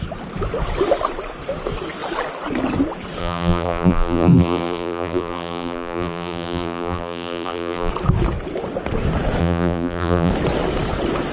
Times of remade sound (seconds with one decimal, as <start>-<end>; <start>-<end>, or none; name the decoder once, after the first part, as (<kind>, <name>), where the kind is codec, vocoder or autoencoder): 3.2-7.9 (vocoder, BigVGAN v2); 9.4-10.3

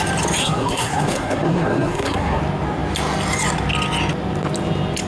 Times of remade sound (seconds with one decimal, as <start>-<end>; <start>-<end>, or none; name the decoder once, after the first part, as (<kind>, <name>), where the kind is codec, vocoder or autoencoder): 0.4-2.4 (codec, SNAC)

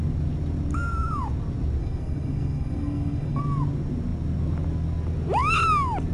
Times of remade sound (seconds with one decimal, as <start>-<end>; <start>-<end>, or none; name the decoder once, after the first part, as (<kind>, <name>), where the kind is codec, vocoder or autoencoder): 1.8-3.4 (codec, SNAC)

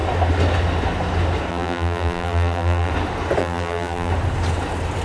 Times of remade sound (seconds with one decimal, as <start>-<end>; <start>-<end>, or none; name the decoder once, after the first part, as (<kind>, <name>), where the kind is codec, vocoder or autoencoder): 1.5-2.9 (vocoder, BigVGAN v2); 3.4-4.1

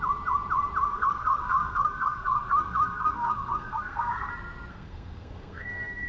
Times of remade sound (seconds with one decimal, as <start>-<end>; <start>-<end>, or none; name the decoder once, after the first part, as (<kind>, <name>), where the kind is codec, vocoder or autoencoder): 0.9-4.3 (codec, SNAC); 4.7-6.1

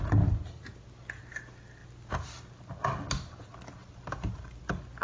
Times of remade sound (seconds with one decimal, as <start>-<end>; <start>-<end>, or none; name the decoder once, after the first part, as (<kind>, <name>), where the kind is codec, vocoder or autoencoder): 3.8-4.6 (vocoder, BigVGAN v2)

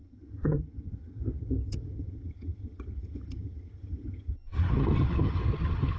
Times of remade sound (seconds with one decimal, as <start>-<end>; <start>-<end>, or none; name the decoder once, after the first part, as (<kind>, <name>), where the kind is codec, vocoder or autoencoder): 0.0-6.0 (vocoder, HiFi-GAN)

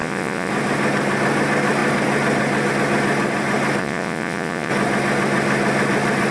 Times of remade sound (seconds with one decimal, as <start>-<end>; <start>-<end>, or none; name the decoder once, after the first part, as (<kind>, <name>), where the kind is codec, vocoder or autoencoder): 0.0-0.5 (vocoder, Vocos); 3.8-4.7